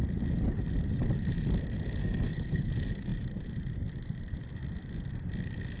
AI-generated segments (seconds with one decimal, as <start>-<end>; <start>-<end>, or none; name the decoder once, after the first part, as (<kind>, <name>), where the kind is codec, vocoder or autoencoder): 2.0-2.7 (codec, SNAC)